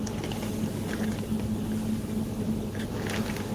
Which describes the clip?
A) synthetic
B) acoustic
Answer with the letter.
B